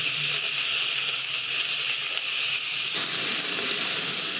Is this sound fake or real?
real